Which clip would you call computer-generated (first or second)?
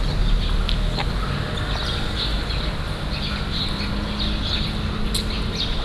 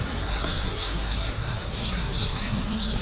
second